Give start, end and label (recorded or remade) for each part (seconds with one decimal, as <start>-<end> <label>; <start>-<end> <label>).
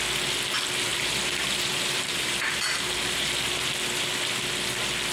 0.0-0.9 recorded; 0.9-3.7 remade; 3.7-5.1 recorded